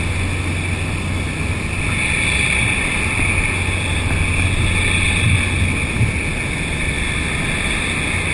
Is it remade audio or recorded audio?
recorded